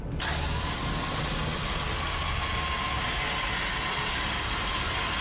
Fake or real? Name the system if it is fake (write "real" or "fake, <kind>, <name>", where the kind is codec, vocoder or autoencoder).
real